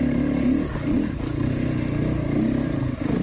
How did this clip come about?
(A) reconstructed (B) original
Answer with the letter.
B